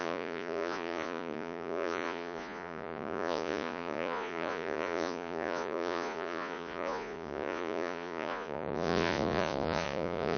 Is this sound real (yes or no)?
no